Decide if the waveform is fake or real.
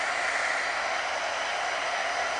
real